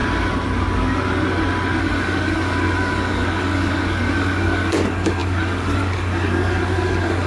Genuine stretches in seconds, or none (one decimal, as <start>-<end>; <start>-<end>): 0.0-1.8